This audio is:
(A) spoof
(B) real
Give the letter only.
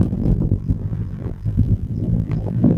A